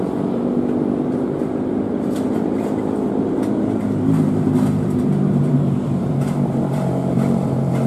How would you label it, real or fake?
fake